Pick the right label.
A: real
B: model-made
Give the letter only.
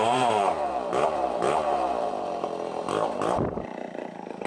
B